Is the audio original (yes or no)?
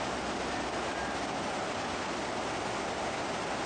yes